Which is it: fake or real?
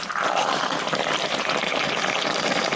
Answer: real